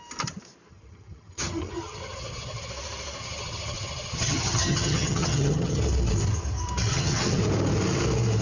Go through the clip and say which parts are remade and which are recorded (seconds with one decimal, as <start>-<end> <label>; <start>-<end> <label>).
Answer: 0.0-0.7 recorded; 0.7-2.7 remade; 2.7-3.2 recorded; 3.2-5.8 remade; 5.8-6.9 recorded; 6.9-7.4 remade; 7.4-8.4 recorded